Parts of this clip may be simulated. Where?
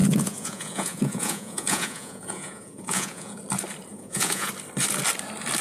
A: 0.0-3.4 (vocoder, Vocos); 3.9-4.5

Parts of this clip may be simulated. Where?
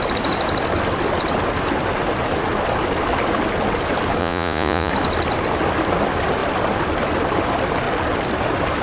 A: 4.2-4.9 (vocoder, Vocos)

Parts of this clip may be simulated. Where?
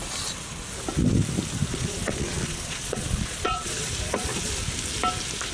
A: 1.7-4.5 (vocoder, Vocos)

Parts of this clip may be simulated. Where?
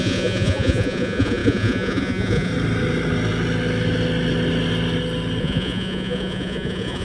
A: 0.0-2.5 (vocoder, Vocos); 5.4-7.0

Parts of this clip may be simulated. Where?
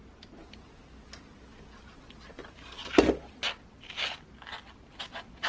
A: 1.9-2.4 (vocoder, Vocos); 4.9-5.5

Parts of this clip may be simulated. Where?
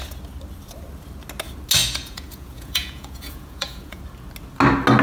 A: 1.8-4.0 (vocoder, Vocos)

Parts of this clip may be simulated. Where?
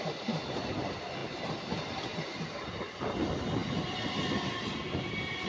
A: none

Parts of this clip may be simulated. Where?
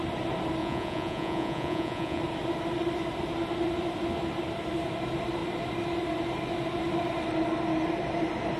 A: 0.6-2.2 (vocoder, Vocos)